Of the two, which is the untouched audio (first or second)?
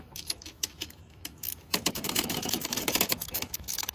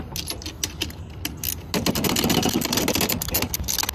second